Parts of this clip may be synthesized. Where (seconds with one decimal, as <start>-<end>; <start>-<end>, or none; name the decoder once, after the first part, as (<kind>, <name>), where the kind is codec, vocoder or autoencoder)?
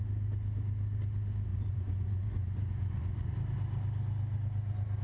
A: 1.5-3.3 (vocoder, Vocos)